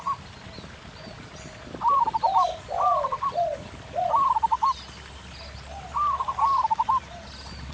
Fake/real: real